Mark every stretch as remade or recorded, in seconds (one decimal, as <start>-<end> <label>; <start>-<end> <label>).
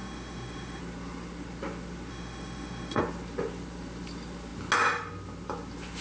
0.0-0.8 remade; 0.8-2.1 recorded; 2.1-3.0 remade; 3.0-6.0 recorded